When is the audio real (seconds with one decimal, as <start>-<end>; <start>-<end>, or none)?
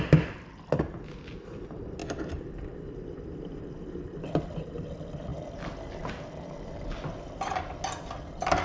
0.0-8.6